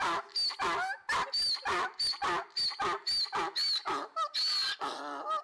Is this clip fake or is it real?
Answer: real